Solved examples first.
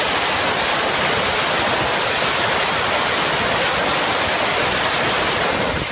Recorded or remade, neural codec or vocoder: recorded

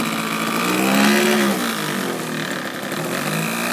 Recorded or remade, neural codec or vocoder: recorded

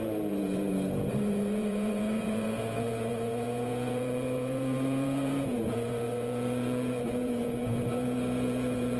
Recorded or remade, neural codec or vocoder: remade, vocoder, Vocos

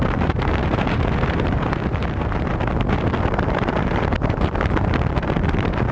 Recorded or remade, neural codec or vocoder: remade, vocoder, BigVGAN v2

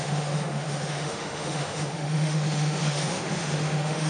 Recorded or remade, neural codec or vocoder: remade, autoencoder, DAC-VAE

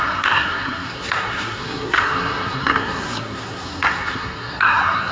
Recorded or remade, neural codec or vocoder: remade, codec, SNAC